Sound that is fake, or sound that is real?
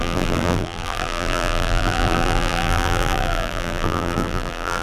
fake